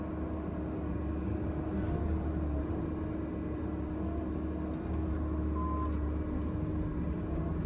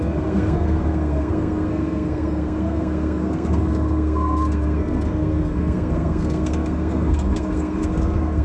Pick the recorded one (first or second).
first